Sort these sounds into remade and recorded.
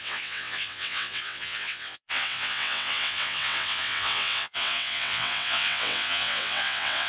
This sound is remade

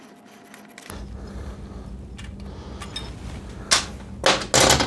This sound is recorded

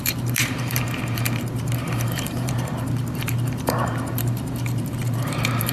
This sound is remade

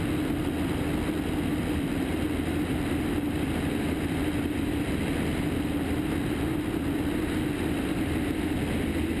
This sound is recorded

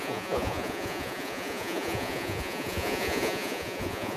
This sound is remade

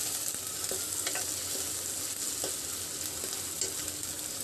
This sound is recorded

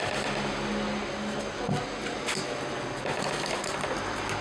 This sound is recorded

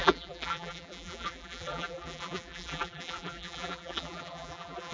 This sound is remade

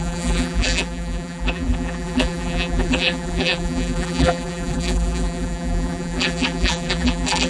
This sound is remade